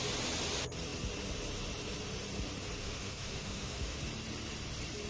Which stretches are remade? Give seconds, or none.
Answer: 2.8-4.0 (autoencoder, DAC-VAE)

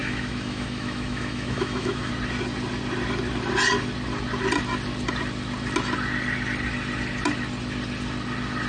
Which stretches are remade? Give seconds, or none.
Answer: 0.0-2.1 (autoencoder, DAC-VAE)